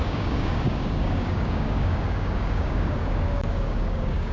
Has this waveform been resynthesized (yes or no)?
yes